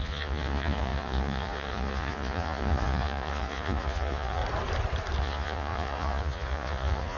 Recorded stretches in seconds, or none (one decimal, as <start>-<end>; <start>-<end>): 4.4-5.2

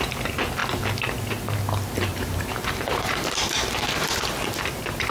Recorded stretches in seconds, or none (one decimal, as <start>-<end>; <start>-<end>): 0.0-2.1

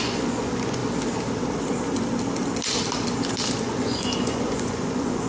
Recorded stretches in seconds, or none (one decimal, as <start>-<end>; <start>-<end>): 0.8-3.6

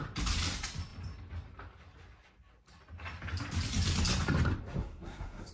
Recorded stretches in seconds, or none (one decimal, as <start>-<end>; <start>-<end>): 0.0-4.8